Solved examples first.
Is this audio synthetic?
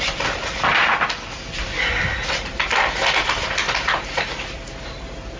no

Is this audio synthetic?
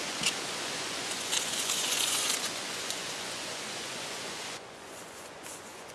yes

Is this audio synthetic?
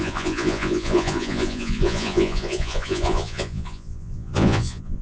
yes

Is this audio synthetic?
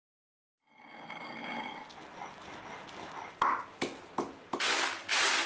no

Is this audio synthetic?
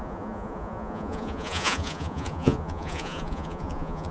yes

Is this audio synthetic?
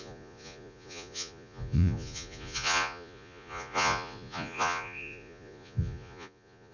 yes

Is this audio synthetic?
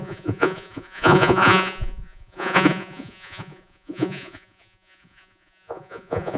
yes